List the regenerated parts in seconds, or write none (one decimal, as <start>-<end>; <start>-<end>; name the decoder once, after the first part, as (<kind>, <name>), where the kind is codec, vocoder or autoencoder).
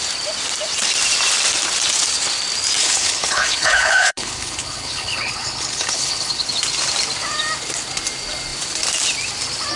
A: 2.8-6.5 (codec, HILCodec)